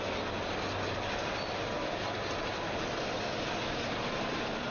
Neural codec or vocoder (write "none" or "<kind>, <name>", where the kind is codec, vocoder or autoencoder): none